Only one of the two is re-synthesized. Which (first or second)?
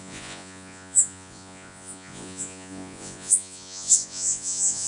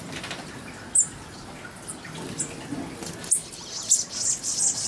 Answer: first